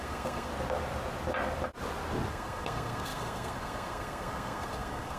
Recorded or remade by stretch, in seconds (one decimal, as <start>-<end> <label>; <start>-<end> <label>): 0.0-0.5 remade; 0.5-2.3 recorded; 2.3-5.2 remade